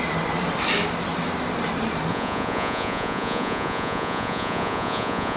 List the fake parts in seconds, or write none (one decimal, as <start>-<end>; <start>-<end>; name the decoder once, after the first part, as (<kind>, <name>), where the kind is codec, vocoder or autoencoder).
2.1-5.4 (vocoder, Vocos)

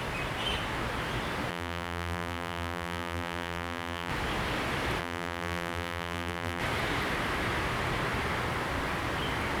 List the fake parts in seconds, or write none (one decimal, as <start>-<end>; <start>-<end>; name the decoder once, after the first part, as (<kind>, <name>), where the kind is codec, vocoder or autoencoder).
1.5-4.1 (vocoder, BigVGAN v2); 5.0-6.6

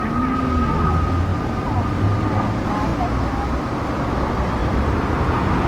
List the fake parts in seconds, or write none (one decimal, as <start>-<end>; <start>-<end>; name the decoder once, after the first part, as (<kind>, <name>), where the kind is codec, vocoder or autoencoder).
1.3-2.4 (vocoder, BigVGAN v2); 4.6-5.2